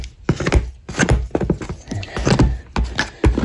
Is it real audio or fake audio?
real